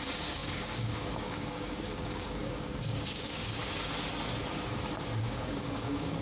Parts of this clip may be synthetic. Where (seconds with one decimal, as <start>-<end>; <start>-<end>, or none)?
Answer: 0.0-3.6; 5.2-6.2